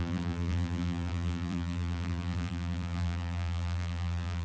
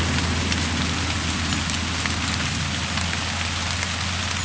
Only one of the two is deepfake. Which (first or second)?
first